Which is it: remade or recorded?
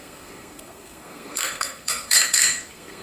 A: remade